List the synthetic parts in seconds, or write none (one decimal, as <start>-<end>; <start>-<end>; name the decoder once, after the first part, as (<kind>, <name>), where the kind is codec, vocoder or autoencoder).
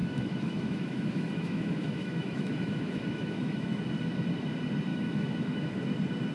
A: 0.0-3.8 (autoencoder, DAC-VAE); 4.9-5.8